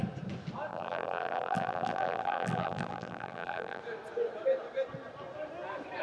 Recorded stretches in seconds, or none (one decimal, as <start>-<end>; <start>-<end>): 0.0-0.7; 3.8-6.0